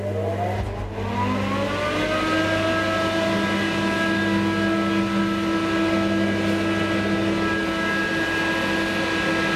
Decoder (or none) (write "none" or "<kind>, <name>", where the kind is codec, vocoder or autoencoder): none